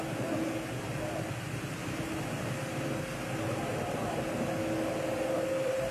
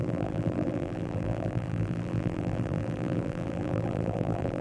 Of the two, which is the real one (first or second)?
first